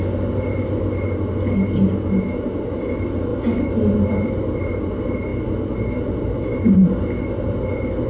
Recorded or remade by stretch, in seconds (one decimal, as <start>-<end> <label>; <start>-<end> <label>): 0.0-8.1 recorded